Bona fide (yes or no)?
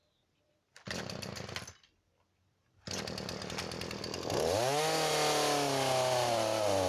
yes